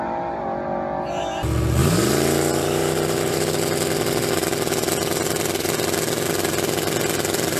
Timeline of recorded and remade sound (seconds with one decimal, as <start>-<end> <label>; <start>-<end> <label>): 0.0-1.8 recorded; 1.8-3.6 remade; 3.6-7.6 recorded